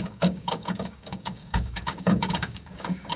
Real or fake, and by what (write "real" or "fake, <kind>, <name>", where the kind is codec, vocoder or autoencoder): fake, codec, DAC